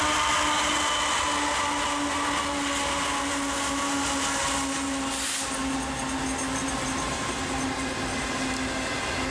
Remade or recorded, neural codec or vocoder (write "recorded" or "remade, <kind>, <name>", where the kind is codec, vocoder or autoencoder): recorded